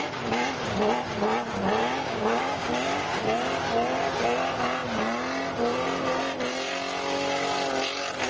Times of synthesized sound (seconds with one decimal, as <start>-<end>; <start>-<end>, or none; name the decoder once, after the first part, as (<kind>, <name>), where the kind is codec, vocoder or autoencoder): 1.8-3.2 (codec, DAC)